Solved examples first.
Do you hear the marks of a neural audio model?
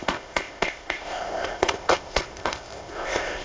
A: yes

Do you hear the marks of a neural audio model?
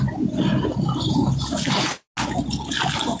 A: no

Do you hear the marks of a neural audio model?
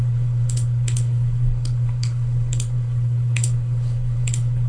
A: yes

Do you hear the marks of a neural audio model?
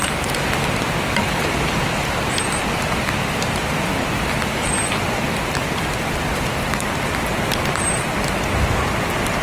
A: yes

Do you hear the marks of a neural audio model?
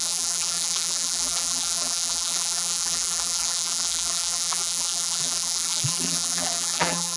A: yes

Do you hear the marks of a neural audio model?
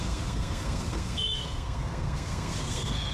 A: yes